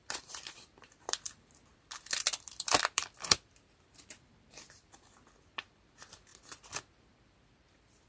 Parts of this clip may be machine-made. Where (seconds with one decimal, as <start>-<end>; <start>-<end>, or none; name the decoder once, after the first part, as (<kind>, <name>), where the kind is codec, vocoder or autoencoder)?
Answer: 0.0-6.3 (vocoder, BigVGAN v2); 7.1-8.1